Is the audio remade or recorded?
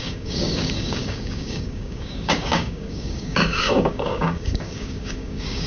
remade